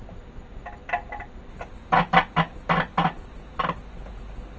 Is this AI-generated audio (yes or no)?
no